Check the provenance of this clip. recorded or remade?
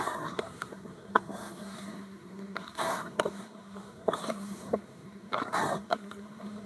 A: remade